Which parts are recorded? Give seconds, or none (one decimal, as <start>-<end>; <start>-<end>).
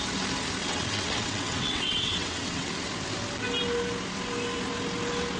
0.0-0.6; 2.7-5.4